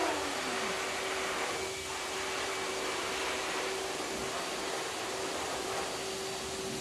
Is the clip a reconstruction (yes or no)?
no